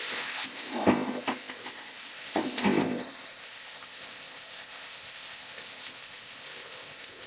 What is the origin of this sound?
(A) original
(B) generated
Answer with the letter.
B